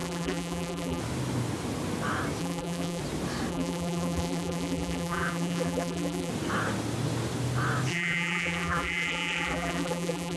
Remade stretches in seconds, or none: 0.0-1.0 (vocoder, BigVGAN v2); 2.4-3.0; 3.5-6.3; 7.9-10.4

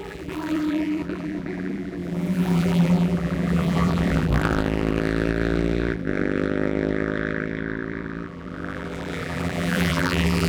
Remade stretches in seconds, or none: 0.0-10.5 (vocoder, BigVGAN v2)